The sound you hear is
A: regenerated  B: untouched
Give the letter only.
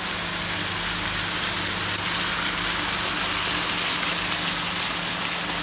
B